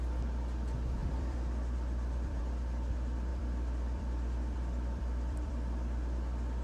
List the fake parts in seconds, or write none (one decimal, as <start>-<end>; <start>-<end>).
1.0-2.4; 3.3-5.5